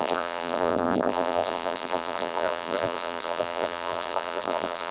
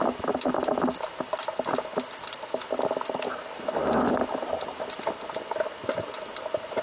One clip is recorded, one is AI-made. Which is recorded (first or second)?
second